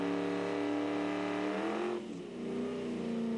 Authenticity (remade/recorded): recorded